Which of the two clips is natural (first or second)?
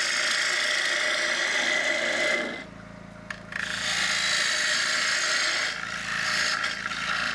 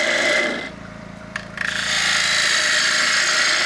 first